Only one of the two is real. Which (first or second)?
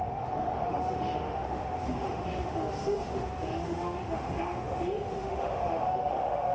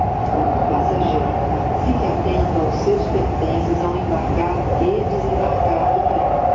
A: second